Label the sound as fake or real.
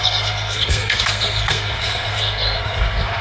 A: fake